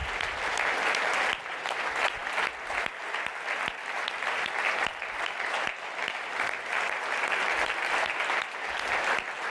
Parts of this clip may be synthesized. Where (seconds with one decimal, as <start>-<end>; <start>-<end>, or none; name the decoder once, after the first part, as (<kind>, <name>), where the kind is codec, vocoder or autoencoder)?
none